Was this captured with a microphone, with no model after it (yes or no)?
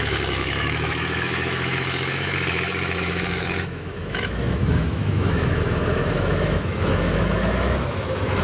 no